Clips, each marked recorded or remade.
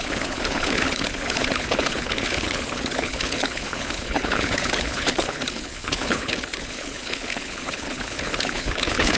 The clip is remade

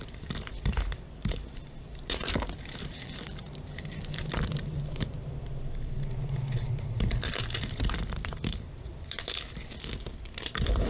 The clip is remade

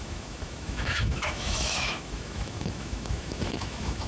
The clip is remade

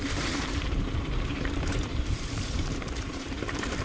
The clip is remade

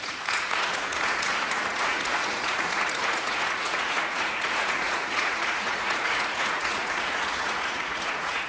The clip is remade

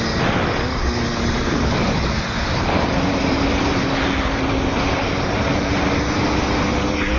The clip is recorded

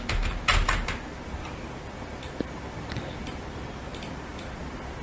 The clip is recorded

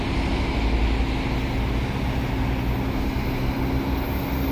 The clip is recorded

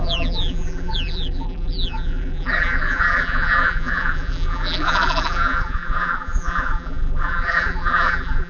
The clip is remade